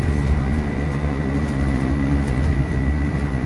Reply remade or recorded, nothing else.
remade